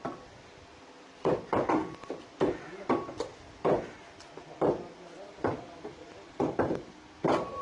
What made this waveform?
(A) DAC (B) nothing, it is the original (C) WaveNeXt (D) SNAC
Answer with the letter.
B